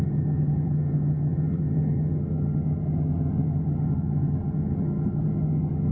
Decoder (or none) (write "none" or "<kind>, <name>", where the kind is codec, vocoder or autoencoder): vocoder, HiFi-GAN